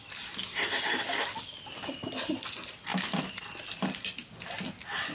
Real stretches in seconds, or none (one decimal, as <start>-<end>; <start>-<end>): 0.0-5.1